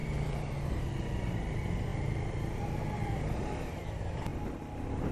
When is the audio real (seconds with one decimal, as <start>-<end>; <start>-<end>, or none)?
0.9-5.1